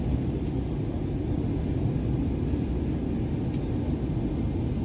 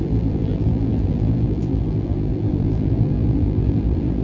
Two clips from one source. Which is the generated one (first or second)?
second